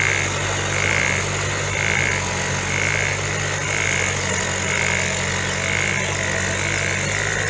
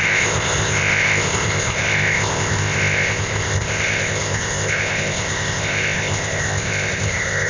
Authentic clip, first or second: first